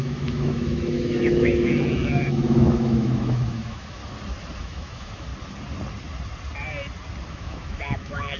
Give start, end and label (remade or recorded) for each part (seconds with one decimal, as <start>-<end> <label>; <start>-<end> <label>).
0.0-4.0 remade; 4.0-4.6 recorded; 4.6-5.3 remade; 5.3-7.3 recorded; 7.3-8.4 remade